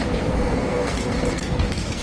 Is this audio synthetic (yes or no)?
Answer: yes